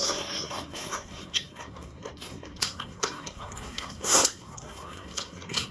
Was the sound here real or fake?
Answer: fake